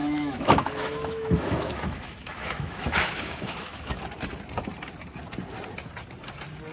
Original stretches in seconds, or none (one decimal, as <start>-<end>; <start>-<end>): 4.0-6.7